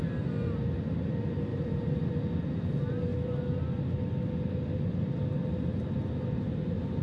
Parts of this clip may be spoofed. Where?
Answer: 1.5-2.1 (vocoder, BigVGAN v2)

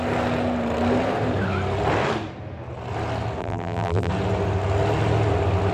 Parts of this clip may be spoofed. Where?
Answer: 3.4-4.1 (vocoder, BigVGAN v2)

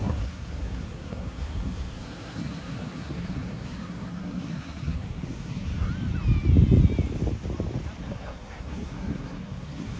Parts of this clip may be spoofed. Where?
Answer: 0.0-5.9 (codec, SNAC); 8.0-10.0

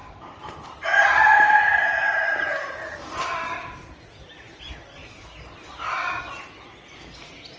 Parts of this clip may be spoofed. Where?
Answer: 0.0-4.6 (vocoder, BigVGAN v2); 5.0-6.2

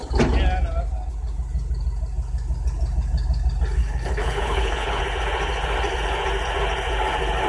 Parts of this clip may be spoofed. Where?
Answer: 3.8-5.0 (codec, HILCodec)

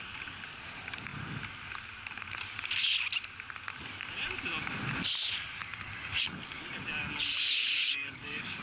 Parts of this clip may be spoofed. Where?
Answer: 5.6-6.6 (codec, DAC); 7.5-8.6

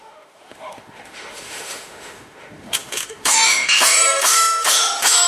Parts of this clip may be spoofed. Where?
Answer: 0.0-5.3 (autoencoder, DAC-VAE)

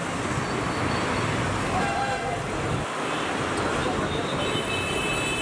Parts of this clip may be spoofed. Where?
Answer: none